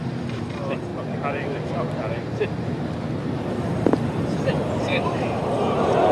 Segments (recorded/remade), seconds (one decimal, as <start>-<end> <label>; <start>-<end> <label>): 0.0-0.9 remade; 0.9-3.5 recorded; 3.5-6.1 remade